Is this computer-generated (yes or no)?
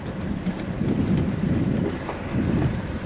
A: no